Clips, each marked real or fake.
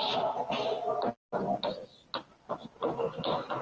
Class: real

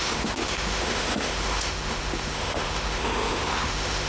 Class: fake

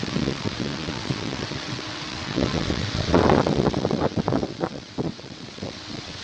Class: fake